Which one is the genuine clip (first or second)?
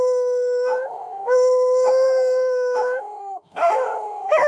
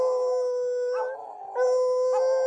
second